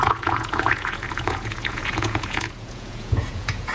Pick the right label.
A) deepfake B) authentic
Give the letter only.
A